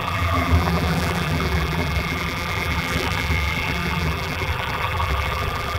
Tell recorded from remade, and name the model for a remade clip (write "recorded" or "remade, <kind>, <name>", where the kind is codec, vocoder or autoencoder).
remade, vocoder, BigVGAN v2